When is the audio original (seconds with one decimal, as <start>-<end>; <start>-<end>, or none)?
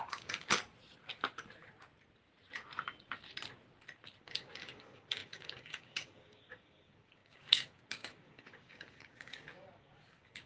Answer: 0.6-4.2